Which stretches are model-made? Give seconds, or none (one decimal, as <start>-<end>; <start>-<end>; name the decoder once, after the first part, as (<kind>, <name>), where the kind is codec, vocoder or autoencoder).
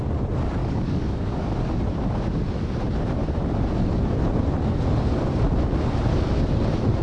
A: 0.6-1.8 (codec, DAC)